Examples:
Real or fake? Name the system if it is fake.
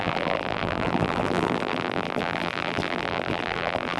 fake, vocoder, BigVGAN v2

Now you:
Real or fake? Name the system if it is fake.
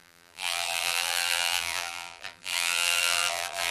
fake, vocoder, BigVGAN v2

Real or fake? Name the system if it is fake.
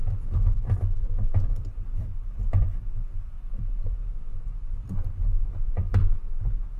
fake, vocoder, BigVGAN v2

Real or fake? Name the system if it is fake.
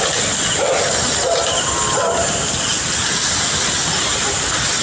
real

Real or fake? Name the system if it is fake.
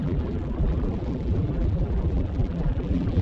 fake, vocoder, BigVGAN v2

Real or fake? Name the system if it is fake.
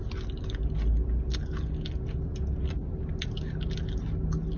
real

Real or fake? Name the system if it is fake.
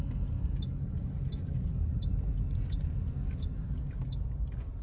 real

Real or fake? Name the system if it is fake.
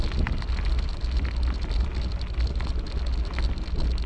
real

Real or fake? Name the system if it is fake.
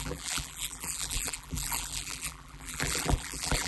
fake, vocoder, BigVGAN v2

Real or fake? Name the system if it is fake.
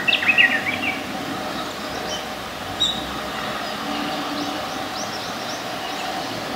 real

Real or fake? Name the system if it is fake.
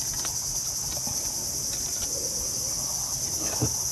real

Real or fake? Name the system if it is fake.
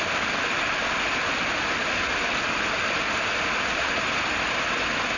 real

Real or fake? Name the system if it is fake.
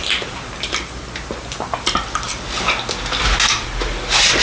real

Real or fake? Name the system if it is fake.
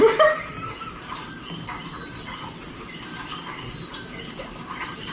fake, vocoder, BigVGAN v2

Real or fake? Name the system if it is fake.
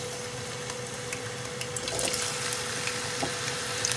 real